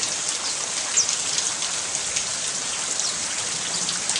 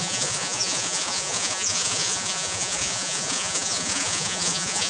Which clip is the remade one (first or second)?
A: second